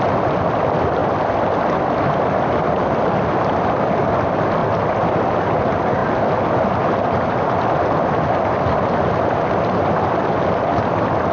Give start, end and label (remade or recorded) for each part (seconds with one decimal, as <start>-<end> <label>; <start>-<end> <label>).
0.0-11.3 recorded